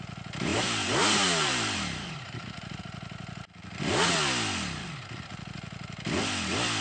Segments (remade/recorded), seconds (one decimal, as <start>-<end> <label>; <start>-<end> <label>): 0.0-0.5 recorded; 0.5-2.8 remade; 2.8-6.8 recorded